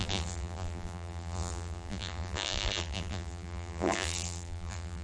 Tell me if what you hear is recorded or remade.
remade